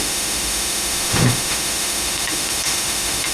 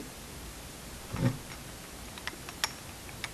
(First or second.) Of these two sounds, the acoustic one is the second